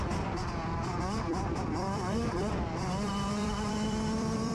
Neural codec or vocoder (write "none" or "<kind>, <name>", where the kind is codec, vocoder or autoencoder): vocoder, BigVGAN v2